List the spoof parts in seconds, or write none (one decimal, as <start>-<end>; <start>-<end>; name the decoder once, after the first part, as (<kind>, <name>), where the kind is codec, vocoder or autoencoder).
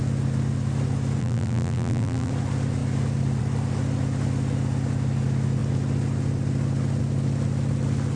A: 1.2-2.3 (vocoder, BigVGAN v2)